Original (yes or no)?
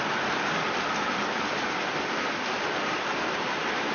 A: yes